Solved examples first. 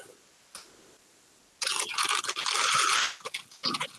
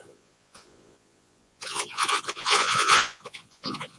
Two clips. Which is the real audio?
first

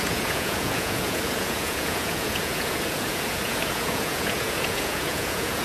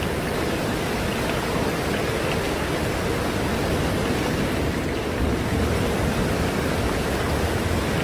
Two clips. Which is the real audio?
second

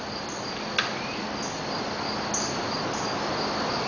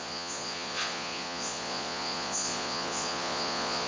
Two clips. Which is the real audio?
first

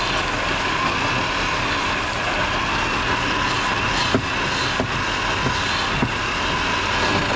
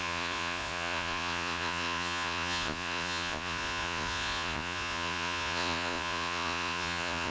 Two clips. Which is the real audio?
first